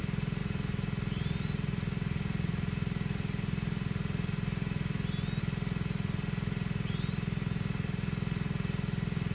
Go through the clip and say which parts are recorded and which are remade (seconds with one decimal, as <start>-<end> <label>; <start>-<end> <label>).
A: 0.0-9.3 recorded

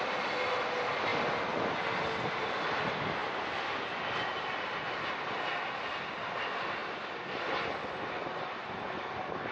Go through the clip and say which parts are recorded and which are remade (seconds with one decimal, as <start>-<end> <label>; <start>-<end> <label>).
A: 0.0-9.5 recorded